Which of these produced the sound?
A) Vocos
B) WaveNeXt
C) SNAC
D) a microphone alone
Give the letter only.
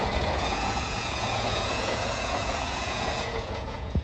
A